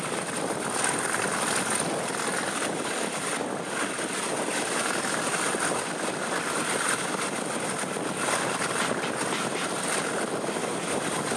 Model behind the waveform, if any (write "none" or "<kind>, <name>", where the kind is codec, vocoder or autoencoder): none